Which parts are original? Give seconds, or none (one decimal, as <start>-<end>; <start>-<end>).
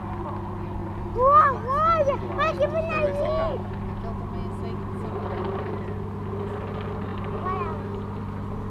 0.0-8.7